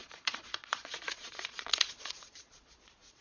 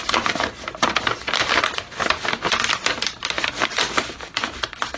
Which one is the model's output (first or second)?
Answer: first